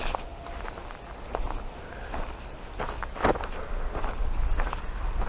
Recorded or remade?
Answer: recorded